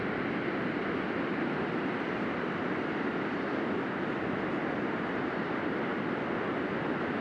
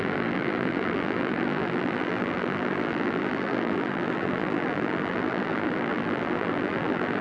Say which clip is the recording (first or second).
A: first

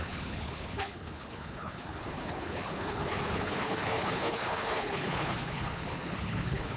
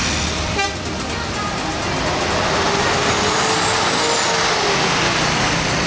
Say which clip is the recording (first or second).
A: second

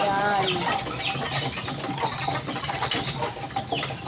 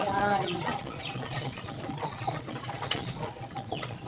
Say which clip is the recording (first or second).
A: first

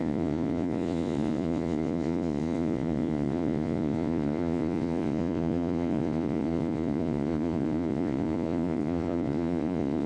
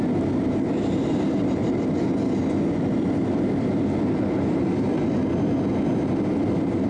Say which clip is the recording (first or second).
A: second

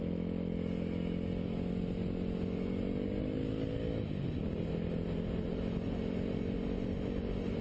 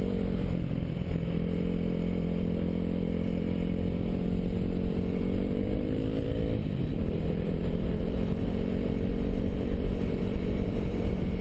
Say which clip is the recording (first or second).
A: first